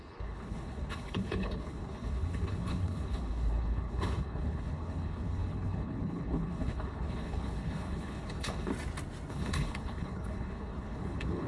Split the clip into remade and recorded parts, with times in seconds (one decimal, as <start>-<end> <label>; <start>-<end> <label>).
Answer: 0.0-8.7 remade; 8.7-9.3 recorded; 9.3-11.5 remade